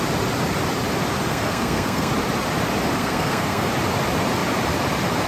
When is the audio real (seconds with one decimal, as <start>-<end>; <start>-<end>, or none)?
0.0-1.3; 2.1-3.0; 3.7-5.3